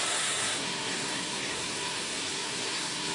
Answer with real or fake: fake